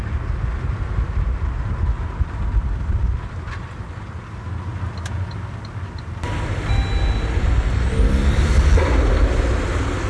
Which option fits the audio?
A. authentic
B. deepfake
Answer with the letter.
A